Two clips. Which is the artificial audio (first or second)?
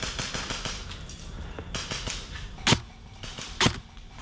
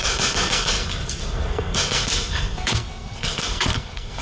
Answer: second